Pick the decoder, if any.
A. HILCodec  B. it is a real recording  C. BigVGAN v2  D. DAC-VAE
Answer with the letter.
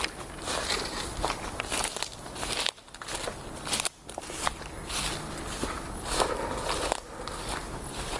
B